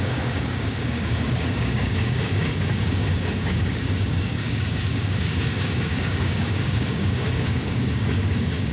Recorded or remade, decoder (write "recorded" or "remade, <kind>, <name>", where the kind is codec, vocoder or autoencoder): remade, codec, DAC